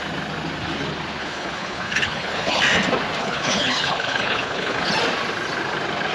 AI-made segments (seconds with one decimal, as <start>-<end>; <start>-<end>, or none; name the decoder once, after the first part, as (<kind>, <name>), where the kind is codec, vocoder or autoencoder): 1.2-2.6 (codec, HILCodec); 3.2-4.9